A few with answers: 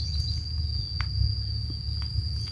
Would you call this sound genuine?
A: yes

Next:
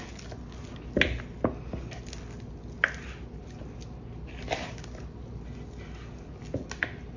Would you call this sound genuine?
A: yes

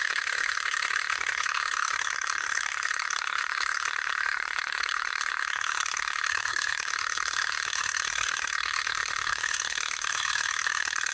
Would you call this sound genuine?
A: no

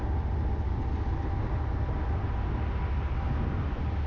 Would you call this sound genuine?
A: yes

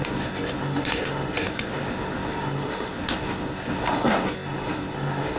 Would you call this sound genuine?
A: no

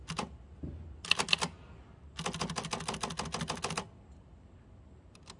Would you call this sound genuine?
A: yes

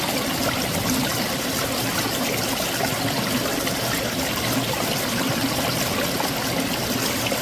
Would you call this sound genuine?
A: yes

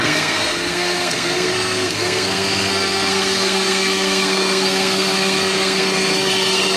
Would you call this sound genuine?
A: no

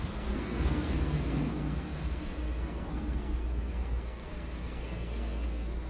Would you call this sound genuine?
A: no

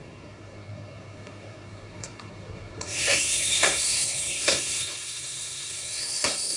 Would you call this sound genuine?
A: no